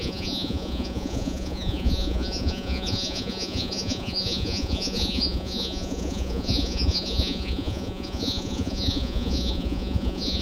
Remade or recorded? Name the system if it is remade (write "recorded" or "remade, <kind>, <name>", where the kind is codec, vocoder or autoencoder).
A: remade, vocoder, Vocos